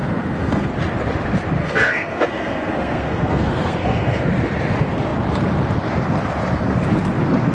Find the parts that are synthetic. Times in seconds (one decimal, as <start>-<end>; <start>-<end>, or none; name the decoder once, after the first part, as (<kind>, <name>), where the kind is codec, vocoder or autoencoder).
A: 0.0-0.7 (codec, SNAC); 1.6-4.3